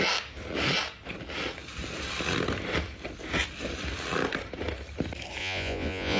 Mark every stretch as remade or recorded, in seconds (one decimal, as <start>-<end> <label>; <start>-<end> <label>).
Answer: 0.0-5.4 recorded; 5.4-6.2 remade